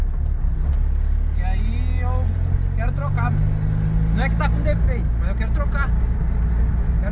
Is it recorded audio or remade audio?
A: recorded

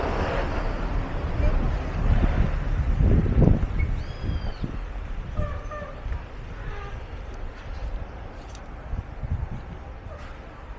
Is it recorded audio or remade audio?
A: recorded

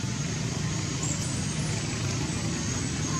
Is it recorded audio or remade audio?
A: recorded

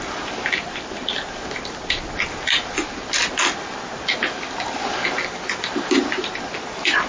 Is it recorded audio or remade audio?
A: recorded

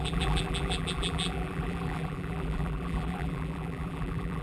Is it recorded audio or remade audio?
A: remade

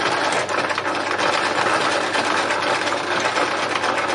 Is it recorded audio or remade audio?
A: recorded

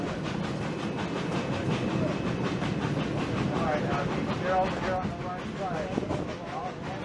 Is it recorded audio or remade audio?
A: recorded